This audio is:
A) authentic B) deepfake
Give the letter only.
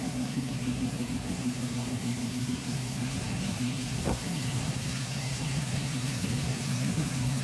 B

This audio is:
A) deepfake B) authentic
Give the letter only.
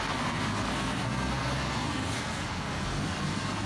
A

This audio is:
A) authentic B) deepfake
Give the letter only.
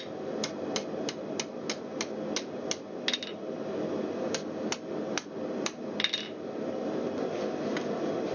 A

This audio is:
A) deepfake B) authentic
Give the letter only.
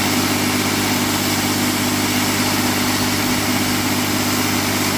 B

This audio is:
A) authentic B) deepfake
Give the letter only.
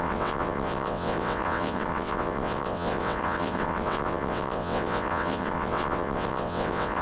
B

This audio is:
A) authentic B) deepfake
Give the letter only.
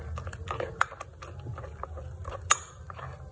A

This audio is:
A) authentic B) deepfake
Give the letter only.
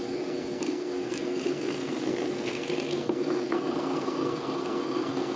B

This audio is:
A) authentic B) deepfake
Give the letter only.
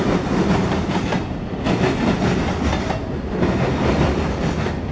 A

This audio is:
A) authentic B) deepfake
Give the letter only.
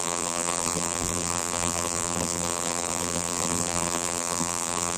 B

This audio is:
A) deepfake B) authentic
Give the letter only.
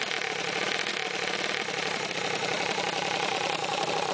B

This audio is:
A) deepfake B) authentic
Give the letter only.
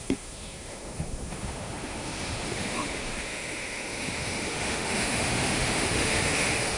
A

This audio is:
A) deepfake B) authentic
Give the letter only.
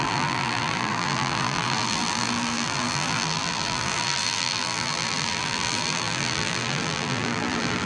A